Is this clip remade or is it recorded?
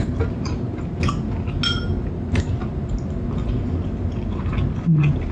recorded